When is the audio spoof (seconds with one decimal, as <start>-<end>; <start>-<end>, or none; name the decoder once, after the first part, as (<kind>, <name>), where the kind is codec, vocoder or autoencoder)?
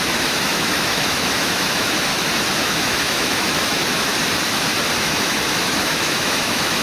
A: 0.0-2.1 (autoencoder, DAC-VAE); 2.6-4.1; 5.0-6.8